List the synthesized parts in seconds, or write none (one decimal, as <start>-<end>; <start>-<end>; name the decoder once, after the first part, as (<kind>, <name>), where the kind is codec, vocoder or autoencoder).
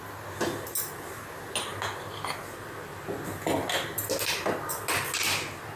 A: none